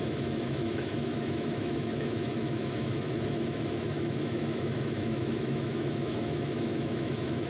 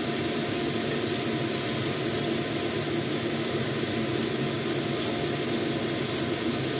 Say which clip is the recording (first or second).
second